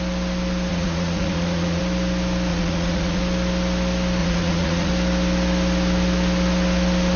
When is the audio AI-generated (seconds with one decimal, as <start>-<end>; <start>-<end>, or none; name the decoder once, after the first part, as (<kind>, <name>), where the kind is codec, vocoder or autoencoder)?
0.7-1.8 (vocoder, Vocos); 2.5-3.2; 4.2-4.9